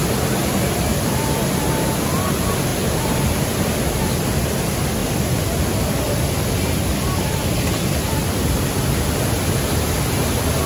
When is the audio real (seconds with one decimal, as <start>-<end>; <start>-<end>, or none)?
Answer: 0.0-2.7; 3.4-10.7